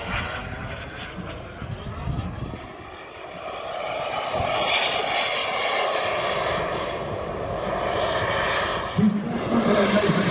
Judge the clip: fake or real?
real